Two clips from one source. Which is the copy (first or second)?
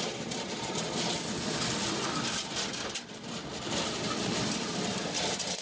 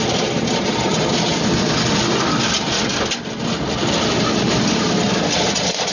first